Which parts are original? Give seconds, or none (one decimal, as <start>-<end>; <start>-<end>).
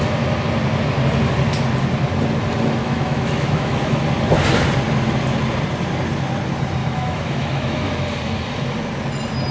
0.0-2.8; 4.0-6.8; 7.9-9.5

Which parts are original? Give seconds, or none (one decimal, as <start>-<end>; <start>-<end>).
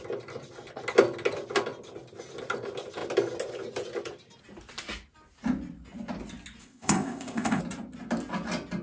0.0-6.6; 7.6-8.8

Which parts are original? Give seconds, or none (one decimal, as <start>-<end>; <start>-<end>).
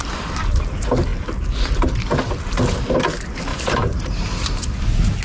0.0-3.5; 4.6-5.2